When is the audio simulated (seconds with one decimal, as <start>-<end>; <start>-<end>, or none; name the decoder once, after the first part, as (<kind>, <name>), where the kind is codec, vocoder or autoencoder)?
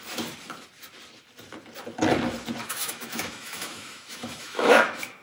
2.6-5.2 (autoencoder, DAC-VAE)